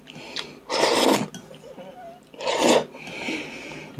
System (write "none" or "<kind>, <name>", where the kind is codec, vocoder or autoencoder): none